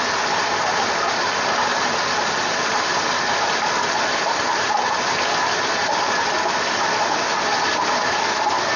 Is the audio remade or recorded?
recorded